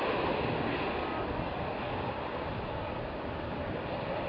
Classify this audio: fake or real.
real